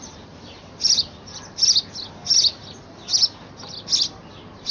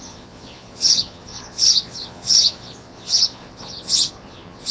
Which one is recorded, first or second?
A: first